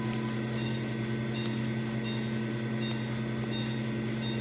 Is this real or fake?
real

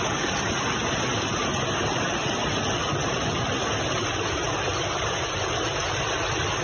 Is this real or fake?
real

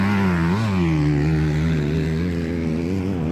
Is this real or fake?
real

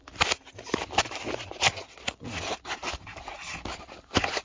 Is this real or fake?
real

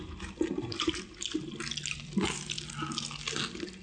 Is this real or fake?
real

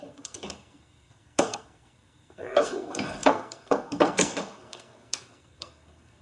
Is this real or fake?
fake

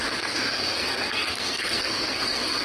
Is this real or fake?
fake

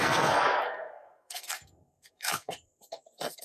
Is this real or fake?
fake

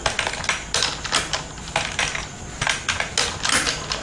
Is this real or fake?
real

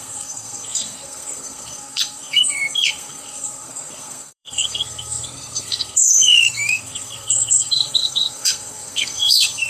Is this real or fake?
fake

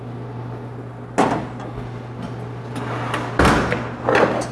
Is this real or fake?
real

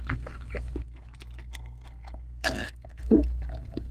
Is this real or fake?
fake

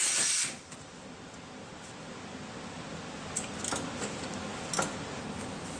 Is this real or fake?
real